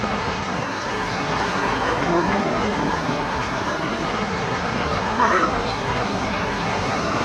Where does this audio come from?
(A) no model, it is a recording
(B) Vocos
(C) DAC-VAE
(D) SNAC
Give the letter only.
D